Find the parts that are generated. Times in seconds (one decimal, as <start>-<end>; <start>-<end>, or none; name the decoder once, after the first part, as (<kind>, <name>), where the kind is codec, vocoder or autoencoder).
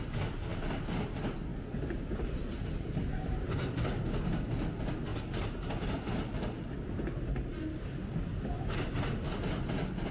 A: none